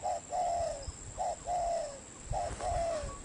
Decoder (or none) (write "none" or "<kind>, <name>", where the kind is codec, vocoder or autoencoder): none